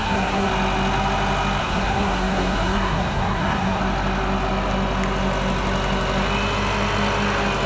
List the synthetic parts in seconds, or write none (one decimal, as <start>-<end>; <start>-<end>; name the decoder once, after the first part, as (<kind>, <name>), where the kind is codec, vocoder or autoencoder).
0.0-0.5 (codec, SNAC); 1.6-3.8